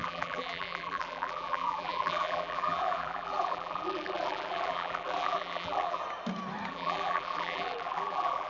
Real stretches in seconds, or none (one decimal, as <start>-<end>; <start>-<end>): 6.0-6.7